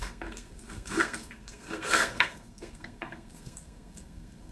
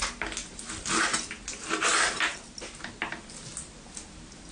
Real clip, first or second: second